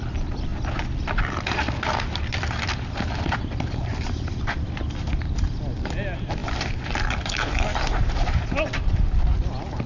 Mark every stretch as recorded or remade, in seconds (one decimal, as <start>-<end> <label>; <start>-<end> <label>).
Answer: 0.0-9.9 recorded